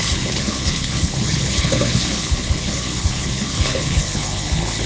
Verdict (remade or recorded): remade